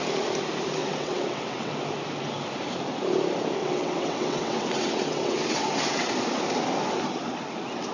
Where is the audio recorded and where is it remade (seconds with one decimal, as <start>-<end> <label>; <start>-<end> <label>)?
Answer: 0.0-0.8 recorded; 0.8-1.7 remade; 1.7-3.6 recorded; 3.6-6.1 remade; 6.1-7.9 recorded